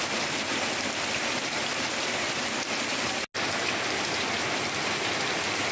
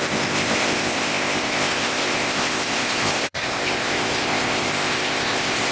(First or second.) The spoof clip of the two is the second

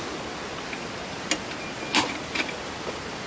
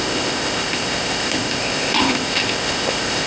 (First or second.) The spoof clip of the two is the second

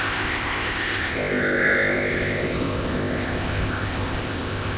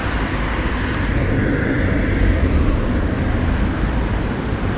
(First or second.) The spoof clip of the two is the first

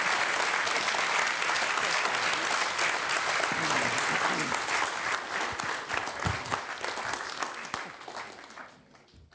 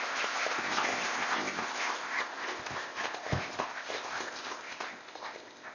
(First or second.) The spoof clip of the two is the second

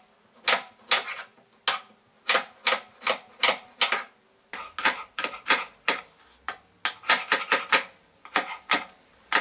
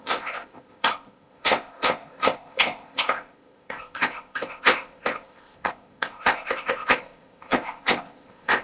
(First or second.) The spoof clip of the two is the second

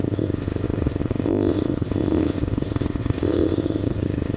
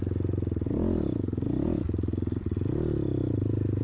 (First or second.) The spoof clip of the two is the first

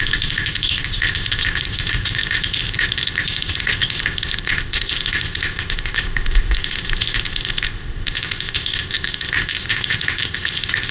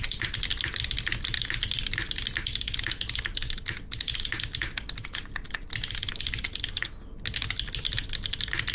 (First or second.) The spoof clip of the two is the first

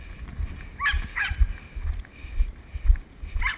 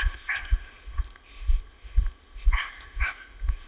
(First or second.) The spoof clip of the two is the second